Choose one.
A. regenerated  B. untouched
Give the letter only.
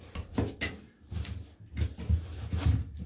B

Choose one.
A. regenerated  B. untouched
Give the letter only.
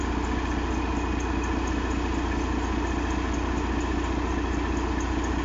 B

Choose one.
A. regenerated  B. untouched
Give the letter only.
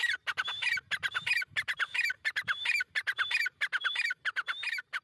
A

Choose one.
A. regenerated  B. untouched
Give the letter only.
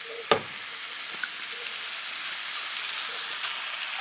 B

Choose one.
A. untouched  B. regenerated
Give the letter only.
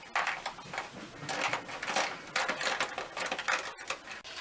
A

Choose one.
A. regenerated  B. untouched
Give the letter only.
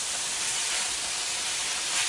B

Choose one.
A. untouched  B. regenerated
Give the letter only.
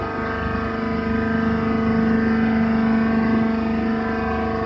A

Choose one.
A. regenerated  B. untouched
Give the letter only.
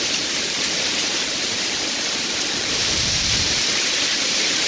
A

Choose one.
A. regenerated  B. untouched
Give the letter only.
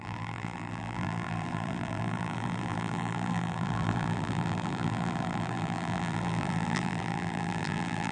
A